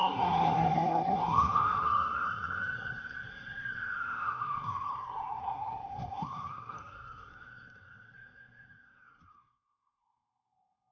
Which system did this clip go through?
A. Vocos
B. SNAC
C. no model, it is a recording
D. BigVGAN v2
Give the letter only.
B